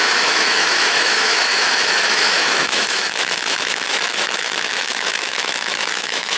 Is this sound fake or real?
fake